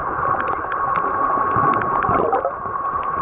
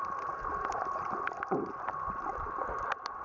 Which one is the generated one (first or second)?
first